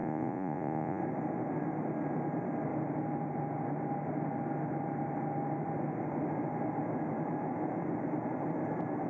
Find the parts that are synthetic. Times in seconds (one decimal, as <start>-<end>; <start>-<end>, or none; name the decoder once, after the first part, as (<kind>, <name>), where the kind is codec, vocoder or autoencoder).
0.0-1.0 (vocoder, Vocos)